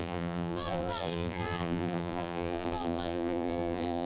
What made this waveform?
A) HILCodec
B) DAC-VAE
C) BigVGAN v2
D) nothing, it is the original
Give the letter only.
C